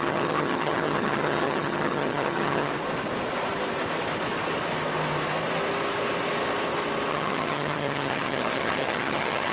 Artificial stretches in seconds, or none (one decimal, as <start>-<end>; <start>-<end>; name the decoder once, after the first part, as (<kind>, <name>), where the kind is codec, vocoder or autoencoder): 0.0-2.7 (vocoder, HiFi-GAN); 7.1-9.5